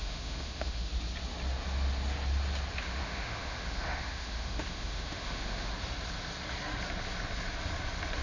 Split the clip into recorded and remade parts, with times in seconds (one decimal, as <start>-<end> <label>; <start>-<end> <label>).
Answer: 0.0-0.9 remade; 0.9-2.8 recorded; 2.8-5.7 remade; 5.7-8.2 recorded